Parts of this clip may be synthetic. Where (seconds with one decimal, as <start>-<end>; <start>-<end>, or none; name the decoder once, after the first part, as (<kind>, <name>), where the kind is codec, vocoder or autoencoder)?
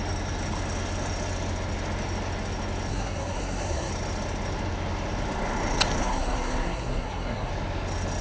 2.9-3.9 (codec, SNAC); 6.0-7.5